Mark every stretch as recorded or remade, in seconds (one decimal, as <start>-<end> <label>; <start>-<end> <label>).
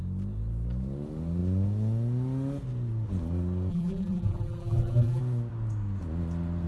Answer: 0.0-3.7 recorded; 3.7-5.2 remade; 5.2-6.7 recorded